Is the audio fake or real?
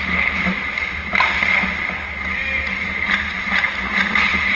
real